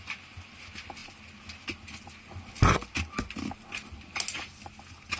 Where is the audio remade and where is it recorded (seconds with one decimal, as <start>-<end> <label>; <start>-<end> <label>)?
0.0-5.2 recorded